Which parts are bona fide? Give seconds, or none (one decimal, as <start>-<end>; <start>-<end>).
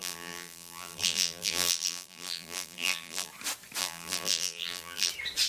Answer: 3.3-3.8; 5.1-5.5